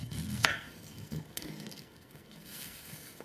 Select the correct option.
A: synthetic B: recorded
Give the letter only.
A